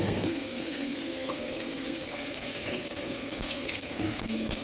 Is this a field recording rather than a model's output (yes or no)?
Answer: no